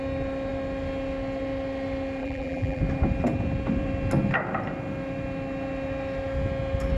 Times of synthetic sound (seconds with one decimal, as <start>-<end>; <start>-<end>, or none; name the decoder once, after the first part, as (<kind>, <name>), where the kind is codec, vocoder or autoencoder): 2.2-2.8 (vocoder, BigVGAN v2)